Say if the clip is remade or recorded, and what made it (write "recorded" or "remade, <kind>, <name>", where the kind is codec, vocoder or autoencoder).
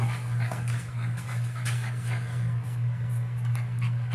remade, codec, SNAC